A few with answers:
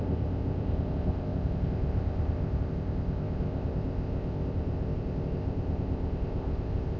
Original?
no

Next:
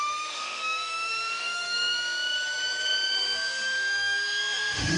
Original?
no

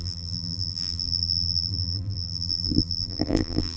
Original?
no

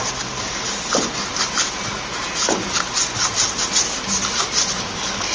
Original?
yes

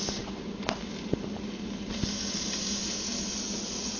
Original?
yes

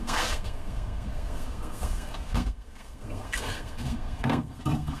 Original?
no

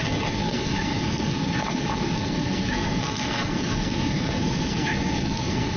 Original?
no